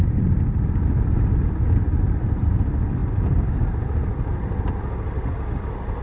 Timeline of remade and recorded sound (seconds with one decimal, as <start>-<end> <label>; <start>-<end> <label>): 0.0-6.0 recorded